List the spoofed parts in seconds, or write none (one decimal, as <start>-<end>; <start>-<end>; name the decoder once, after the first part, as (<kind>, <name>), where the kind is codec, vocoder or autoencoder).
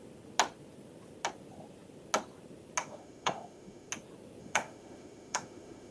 2.8-3.9 (autoencoder, DAC-VAE); 4.4-5.9